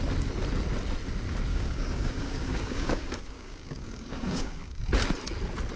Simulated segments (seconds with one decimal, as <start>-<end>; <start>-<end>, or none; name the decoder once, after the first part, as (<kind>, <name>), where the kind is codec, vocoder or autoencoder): 1.5-4.8 (codec, DAC)